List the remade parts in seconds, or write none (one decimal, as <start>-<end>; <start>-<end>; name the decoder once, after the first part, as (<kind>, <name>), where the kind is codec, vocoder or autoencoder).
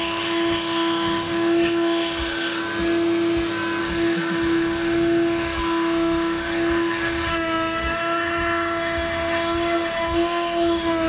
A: 0.0-2.6 (autoencoder, DAC-VAE); 3.8-11.1